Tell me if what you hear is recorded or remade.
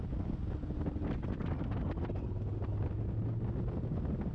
recorded